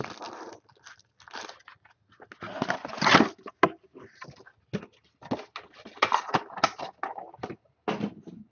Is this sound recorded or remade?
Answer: recorded